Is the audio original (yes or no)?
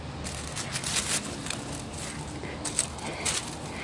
yes